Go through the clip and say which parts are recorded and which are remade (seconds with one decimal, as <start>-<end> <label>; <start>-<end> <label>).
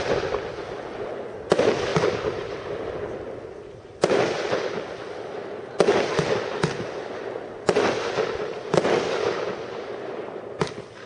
0.0-1.9 recorded; 1.9-3.6 remade; 3.6-11.1 recorded